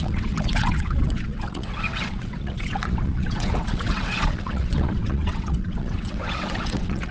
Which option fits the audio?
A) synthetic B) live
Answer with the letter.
A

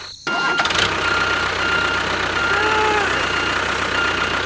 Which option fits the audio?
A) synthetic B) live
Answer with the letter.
B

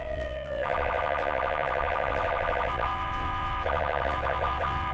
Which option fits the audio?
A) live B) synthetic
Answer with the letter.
B